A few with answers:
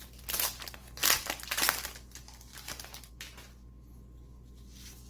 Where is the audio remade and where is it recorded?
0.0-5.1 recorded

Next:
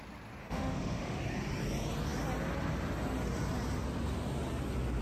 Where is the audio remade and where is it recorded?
0.0-0.4 recorded; 0.4-1.2 remade; 1.2-5.0 recorded

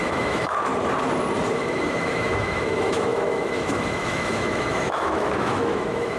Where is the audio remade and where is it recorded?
0.0-0.7 remade; 0.7-1.5 recorded; 1.5-6.2 remade

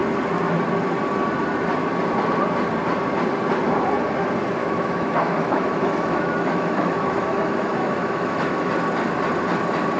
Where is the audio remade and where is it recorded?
0.0-4.6 recorded; 4.6-8.7 remade; 8.7-10.0 recorded

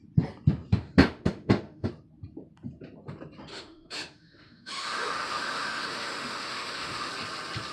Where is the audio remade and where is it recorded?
0.0-1.0 recorded; 1.0-1.9 remade; 1.9-3.5 recorded; 3.5-7.1 remade; 7.1-7.7 recorded

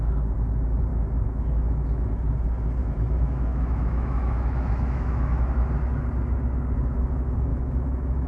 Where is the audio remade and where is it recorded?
0.0-0.9 recorded; 0.9-2.1 remade; 2.1-2.8 recorded; 2.8-5.5 remade; 5.5-7.5 recorded; 7.5-8.3 remade